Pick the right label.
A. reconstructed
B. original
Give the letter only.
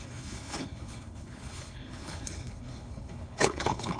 A